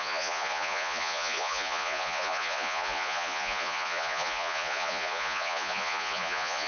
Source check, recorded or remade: remade